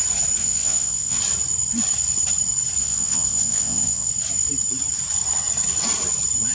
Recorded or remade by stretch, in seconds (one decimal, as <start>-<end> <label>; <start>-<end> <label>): 0.0-0.4 recorded; 0.4-1.2 remade; 1.2-2.8 recorded; 2.8-4.1 remade; 4.1-6.5 recorded